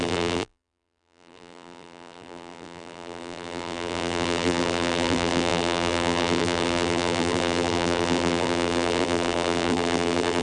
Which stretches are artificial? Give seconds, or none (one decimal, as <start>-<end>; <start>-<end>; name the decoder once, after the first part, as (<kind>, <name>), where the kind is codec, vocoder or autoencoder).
0.0-10.4 (vocoder, BigVGAN v2)